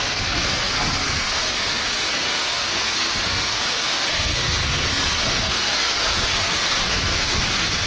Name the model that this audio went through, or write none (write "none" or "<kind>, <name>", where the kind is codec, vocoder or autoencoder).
codec, SNAC